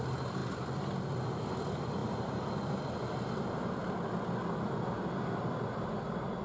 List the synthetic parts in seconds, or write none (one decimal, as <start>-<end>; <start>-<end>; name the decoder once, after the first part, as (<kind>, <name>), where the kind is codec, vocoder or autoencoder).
none